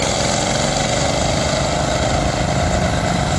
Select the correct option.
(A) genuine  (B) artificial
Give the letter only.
A